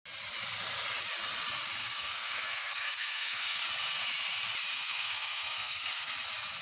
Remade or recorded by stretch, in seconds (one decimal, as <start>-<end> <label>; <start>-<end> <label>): 0.0-1.8 recorded; 1.8-3.6 remade; 3.6-4.7 recorded; 4.7-6.1 remade; 6.1-6.6 recorded